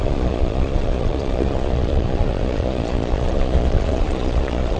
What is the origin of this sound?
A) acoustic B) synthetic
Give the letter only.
B